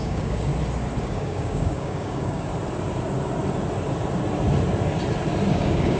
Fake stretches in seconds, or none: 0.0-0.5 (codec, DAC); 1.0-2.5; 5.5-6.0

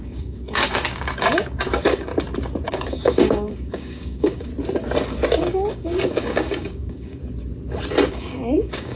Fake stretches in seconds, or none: 0.0-2.1 (codec, DAC); 2.7-4.5; 5.4-7.2; 8.1-9.0

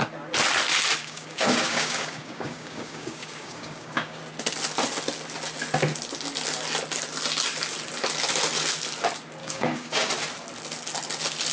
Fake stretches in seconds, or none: 1.0-4.2 (codec, DAC); 9.4-10.1

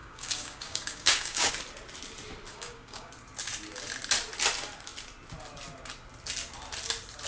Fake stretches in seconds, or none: 0.0-1.5 (codec, DAC); 2.5-3.1

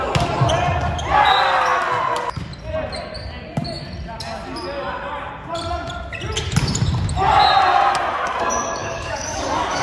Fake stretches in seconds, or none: 8.8-9.8 (codec, DAC)

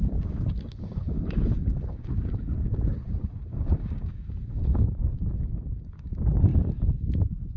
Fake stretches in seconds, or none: 0.0-6.5 (codec, DAC)

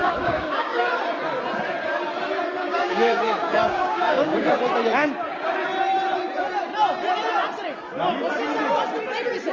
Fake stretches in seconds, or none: 0.0-0.9 (codec, DAC); 2.6-4.6